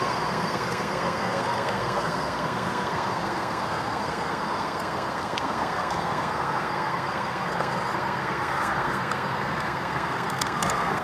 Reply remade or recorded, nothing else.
remade